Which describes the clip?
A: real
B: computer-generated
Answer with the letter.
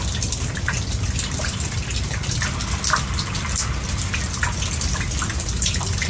A